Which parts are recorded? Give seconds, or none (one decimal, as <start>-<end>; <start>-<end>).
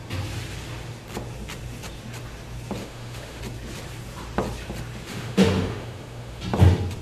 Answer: 0.0-2.8; 3.4-5.1; 6.4-7.0